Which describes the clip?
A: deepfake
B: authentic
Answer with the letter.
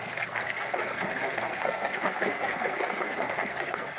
A